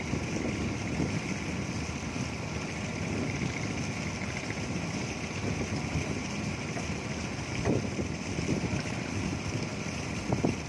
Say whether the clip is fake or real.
real